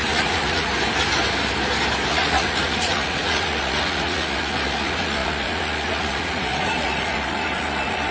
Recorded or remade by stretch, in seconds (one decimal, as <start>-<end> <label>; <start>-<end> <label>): 0.0-0.7 remade; 0.7-2.1 recorded; 2.1-8.1 remade